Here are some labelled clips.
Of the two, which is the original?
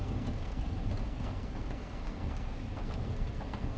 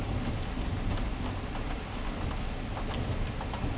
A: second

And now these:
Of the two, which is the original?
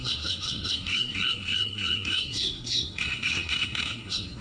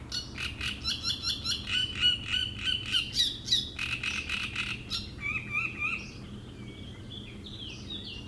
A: second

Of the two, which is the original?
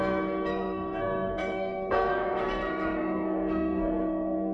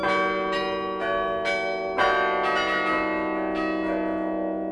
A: second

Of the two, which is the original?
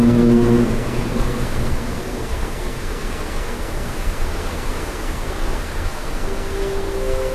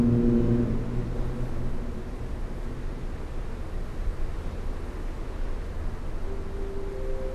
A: second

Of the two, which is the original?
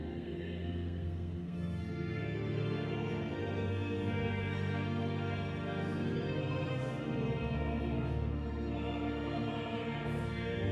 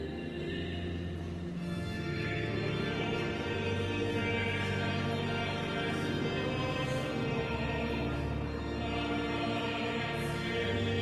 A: second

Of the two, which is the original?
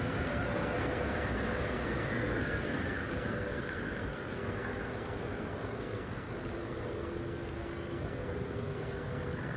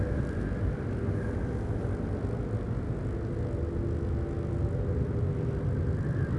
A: second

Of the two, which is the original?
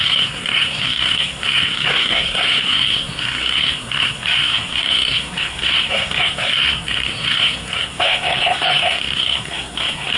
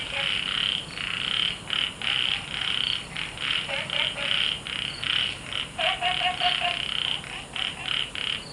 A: second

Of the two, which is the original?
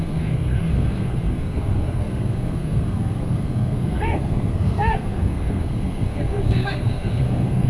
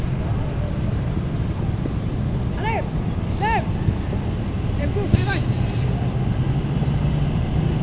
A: second